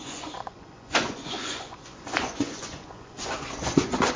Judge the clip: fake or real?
fake